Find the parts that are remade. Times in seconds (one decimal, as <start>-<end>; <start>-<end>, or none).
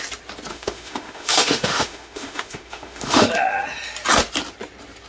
0.5-3.3